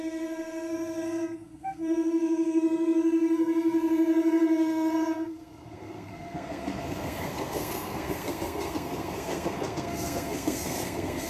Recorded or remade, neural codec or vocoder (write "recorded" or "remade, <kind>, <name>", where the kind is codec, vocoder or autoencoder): remade, codec, SNAC